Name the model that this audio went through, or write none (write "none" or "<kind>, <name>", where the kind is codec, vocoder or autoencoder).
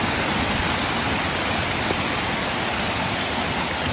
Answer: none